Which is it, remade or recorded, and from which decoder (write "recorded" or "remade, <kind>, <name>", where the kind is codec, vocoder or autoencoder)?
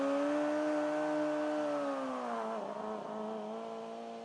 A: recorded